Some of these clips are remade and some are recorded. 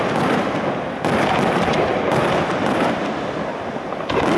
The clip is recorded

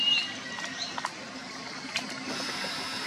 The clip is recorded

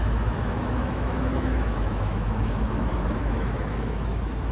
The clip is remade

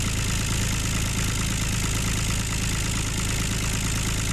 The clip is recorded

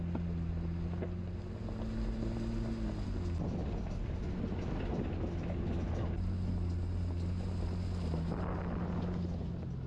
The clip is recorded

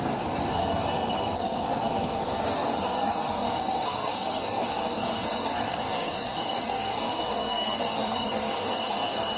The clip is remade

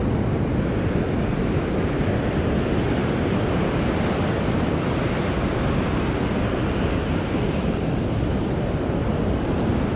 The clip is recorded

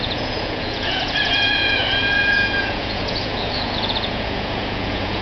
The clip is remade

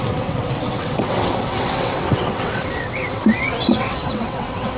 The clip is remade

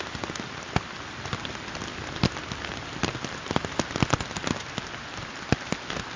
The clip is recorded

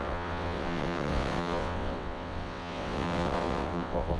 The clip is remade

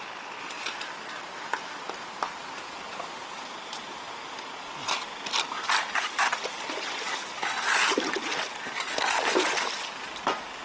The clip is recorded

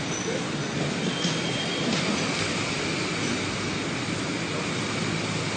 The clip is recorded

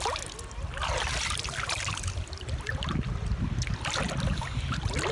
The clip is recorded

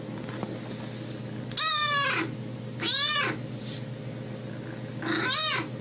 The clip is recorded